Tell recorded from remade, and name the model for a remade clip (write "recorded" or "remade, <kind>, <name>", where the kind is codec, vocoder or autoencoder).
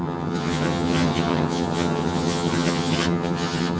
remade, vocoder, HiFi-GAN